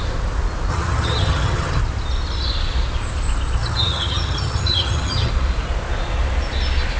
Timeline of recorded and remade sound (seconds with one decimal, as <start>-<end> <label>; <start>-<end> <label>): 0.0-0.7 recorded; 0.7-1.8 remade; 1.8-3.6 recorded; 3.6-5.3 remade; 5.3-7.0 recorded